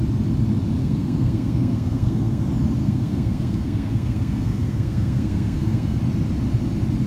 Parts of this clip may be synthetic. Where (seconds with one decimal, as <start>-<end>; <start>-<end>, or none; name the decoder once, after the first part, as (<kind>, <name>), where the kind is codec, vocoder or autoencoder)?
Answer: 0.8-2.4 (codec, SNAC); 2.8-6.0